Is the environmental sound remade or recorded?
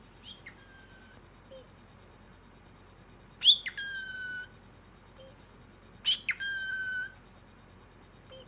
recorded